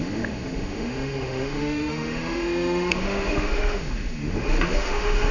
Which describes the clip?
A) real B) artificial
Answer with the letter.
B